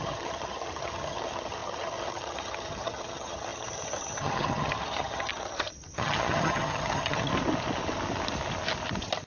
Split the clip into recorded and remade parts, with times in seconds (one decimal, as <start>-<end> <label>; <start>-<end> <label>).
0.0-7.3 remade; 7.3-9.3 recorded